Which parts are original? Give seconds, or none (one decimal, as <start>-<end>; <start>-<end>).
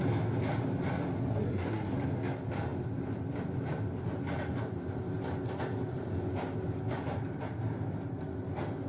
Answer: 0.0-1.3; 1.9-8.9